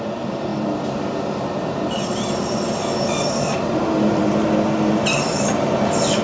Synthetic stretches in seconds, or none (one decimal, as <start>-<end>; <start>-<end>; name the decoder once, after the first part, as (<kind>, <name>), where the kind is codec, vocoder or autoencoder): none